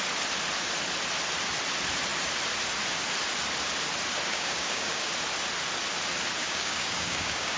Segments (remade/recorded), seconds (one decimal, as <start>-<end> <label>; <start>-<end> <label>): 0.0-4.3 recorded; 4.3-5.1 remade; 5.1-6.4 recorded; 6.4-7.6 remade